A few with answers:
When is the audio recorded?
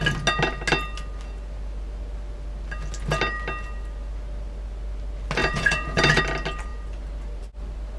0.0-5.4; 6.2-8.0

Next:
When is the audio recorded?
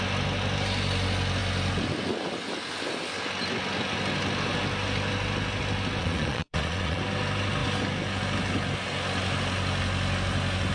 0.0-6.0; 7.0-10.7